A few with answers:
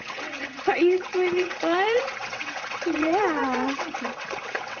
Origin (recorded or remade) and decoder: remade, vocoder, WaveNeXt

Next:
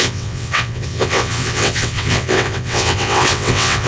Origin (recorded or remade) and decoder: remade, vocoder, WaveNeXt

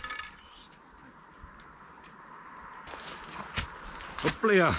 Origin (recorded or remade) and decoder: recorded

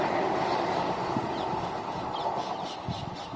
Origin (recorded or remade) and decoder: recorded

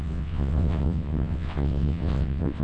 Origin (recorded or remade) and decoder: remade, vocoder, WaveNeXt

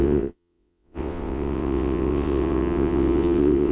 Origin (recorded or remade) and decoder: remade, vocoder, WaveNeXt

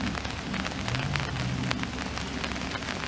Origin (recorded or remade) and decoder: recorded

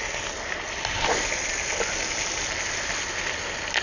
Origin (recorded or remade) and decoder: recorded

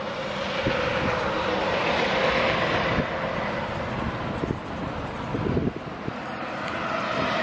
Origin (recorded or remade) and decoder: recorded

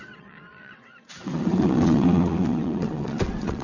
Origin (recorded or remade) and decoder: remade, vocoder, WaveNeXt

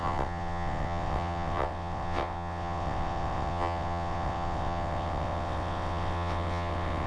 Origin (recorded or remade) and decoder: remade, vocoder, WaveNeXt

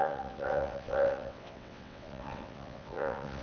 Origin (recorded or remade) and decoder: remade, vocoder, WaveNeXt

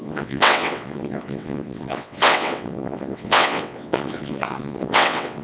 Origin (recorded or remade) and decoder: remade, vocoder, WaveNeXt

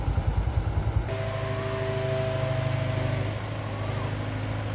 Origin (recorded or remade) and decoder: recorded